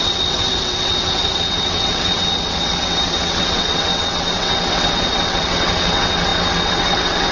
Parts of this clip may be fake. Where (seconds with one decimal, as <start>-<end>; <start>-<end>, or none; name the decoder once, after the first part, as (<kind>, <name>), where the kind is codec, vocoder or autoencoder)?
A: 0.0-7.3 (vocoder, WaveNeXt)